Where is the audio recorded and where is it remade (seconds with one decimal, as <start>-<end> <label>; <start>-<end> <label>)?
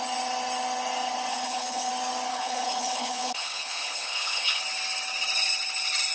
0.0-1.3 recorded; 1.3-1.9 remade; 1.9-2.3 recorded; 2.3-4.6 remade; 4.6-6.1 recorded